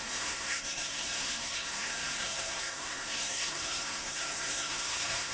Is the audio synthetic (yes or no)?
yes